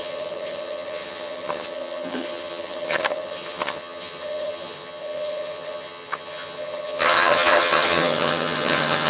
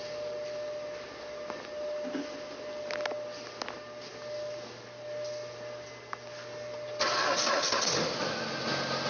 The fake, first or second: first